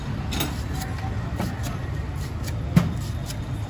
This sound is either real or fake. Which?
real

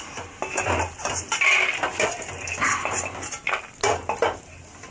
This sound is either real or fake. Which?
real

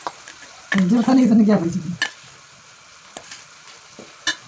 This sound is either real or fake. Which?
real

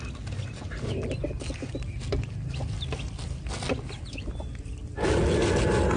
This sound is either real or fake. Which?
real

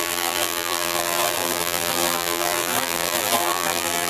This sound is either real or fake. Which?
fake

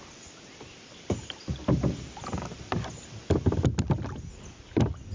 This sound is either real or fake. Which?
real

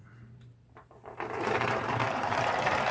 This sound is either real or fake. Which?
fake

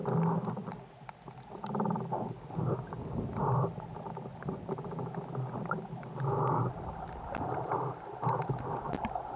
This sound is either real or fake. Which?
real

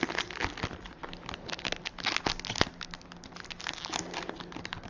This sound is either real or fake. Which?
real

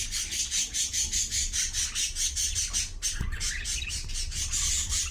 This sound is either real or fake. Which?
real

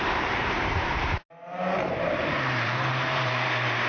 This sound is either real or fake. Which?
fake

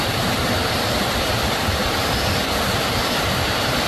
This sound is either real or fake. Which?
real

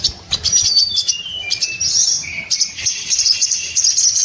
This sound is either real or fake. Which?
fake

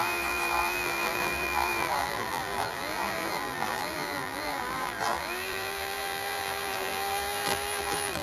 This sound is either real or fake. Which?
fake